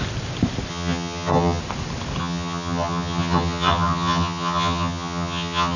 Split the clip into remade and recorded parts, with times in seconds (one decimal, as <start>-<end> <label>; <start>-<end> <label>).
0.0-0.7 recorded; 0.7-1.6 remade; 1.6-2.2 recorded; 2.2-5.8 remade